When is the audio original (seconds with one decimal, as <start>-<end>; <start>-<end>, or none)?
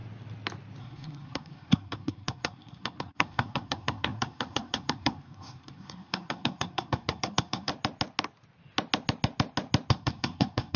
0.0-0.8; 7.7-9.9